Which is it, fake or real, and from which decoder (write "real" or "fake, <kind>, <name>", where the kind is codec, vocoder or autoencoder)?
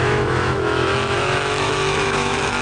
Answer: fake, autoencoder, DAC-VAE